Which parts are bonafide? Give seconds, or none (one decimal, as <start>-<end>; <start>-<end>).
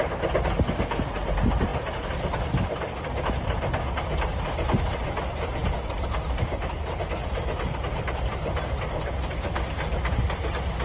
0.0-10.8